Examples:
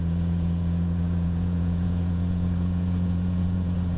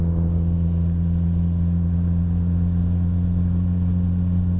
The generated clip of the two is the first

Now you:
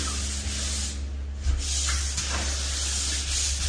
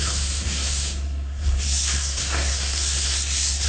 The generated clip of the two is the second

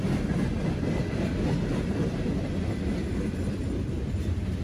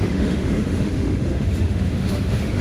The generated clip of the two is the second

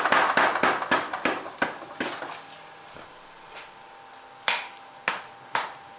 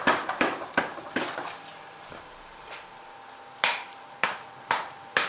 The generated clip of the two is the second